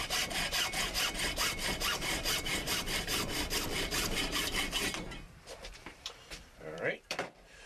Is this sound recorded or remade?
remade